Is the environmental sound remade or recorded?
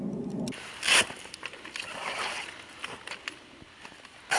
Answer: recorded